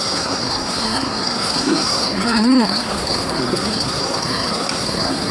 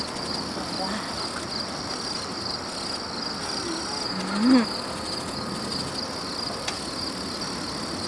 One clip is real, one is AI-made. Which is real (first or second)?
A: second